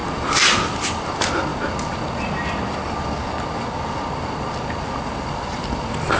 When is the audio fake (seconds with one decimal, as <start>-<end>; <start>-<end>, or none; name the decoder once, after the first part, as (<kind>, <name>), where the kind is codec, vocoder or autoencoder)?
0.0-1.5 (vocoder, BigVGAN v2); 5.2-6.2